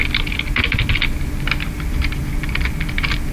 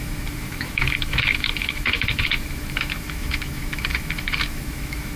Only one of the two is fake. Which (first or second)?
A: second